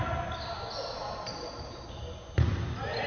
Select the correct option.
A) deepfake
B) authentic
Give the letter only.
B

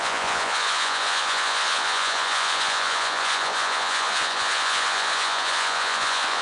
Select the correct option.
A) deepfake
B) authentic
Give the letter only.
A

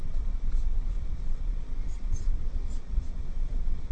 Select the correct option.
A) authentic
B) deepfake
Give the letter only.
B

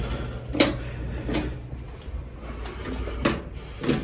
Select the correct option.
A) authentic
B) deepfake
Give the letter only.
A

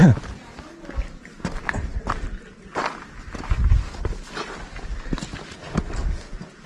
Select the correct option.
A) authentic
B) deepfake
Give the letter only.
A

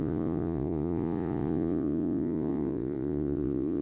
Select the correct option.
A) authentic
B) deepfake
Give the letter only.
B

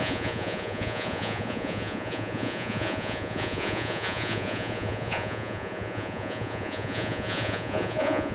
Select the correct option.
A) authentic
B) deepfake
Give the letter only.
B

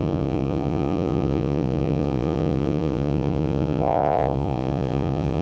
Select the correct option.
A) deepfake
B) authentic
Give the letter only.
A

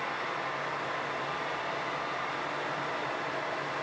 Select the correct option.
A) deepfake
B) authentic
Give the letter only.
B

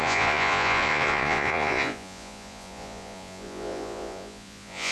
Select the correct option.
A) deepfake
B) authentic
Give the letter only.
A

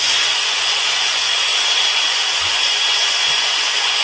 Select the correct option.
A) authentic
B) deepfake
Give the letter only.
B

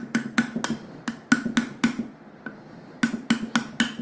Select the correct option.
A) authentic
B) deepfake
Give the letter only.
A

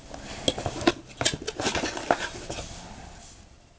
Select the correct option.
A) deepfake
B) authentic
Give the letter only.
B